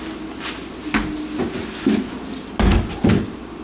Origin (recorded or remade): recorded